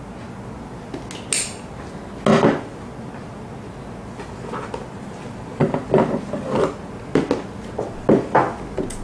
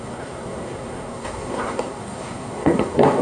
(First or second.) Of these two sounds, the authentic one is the first